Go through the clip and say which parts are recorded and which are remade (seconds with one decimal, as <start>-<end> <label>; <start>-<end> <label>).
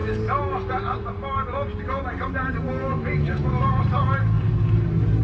0.0-2.8 recorded; 2.8-3.8 remade; 3.8-5.2 recorded